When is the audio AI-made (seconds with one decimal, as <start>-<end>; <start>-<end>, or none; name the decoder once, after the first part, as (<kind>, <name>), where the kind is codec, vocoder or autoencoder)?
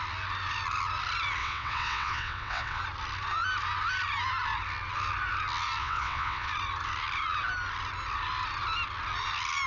1.4-2.8 (vocoder, WaveNeXt); 5.8-6.5